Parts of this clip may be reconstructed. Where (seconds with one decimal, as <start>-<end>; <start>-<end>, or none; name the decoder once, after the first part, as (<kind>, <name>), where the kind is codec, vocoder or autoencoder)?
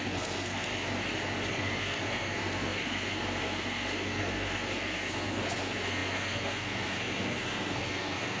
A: 0.0-0.7 (codec, SNAC); 1.5-8.4